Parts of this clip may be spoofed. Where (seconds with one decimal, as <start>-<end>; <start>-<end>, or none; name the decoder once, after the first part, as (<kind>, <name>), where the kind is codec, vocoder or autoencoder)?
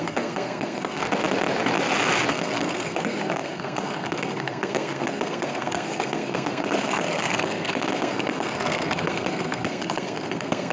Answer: 0.0-1.0 (codec, SNAC); 2.3-10.7